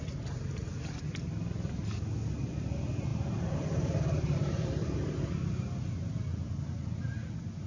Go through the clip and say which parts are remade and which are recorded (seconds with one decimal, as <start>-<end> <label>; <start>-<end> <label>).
0.0-3.1 recorded; 3.1-6.1 remade; 6.1-7.7 recorded